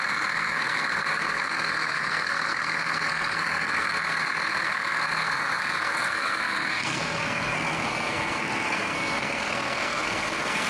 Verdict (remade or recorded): remade